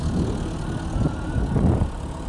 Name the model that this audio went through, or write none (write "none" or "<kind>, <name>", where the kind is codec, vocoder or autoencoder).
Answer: none